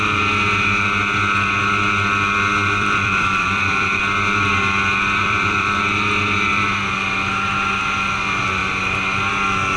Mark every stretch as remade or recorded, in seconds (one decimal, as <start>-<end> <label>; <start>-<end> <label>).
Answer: 0.0-2.6 recorded; 2.6-4.0 remade; 4.0-5.2 recorded; 5.2-5.8 remade; 5.8-9.8 recorded